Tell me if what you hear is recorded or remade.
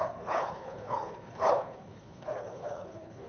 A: remade